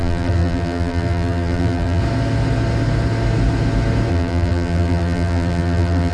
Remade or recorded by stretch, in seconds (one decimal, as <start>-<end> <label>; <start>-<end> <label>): 0.0-2.0 remade; 2.0-4.1 recorded; 4.1-6.1 remade